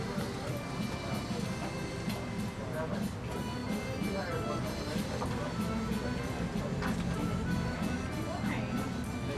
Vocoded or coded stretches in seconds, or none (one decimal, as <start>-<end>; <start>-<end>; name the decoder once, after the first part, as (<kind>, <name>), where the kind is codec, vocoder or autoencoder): none